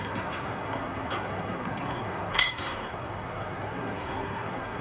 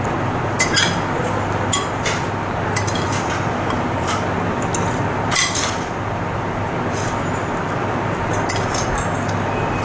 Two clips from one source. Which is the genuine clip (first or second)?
second